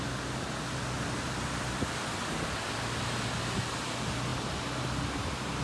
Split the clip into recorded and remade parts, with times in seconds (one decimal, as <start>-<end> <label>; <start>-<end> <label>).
0.0-5.6 recorded